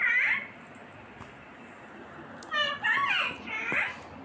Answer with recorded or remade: recorded